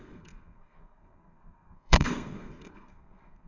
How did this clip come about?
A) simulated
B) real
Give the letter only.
A